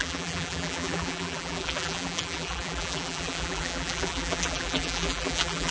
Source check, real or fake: fake